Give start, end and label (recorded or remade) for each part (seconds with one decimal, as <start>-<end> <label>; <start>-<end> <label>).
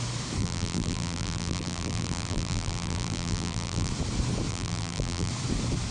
0.0-0.4 recorded; 0.4-3.9 remade; 3.9-4.5 recorded; 4.5-5.3 remade; 5.3-5.9 recorded